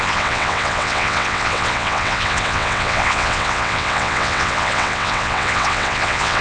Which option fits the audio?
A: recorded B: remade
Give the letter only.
B